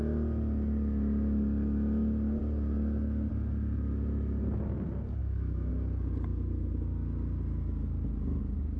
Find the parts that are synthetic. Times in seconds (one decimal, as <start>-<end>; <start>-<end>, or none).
5.2-5.7